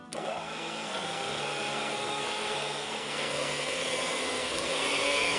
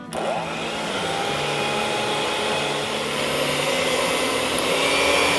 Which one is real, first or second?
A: second